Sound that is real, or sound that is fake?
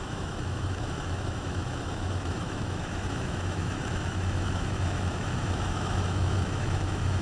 fake